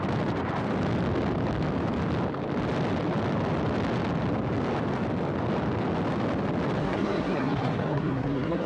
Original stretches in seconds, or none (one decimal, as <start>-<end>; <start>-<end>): 0.0-6.8